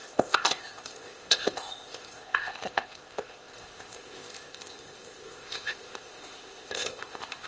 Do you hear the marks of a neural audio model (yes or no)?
yes